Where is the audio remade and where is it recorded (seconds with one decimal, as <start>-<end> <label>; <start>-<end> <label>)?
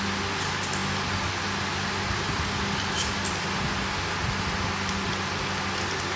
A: 0.0-6.2 recorded